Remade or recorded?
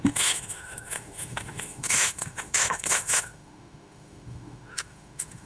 remade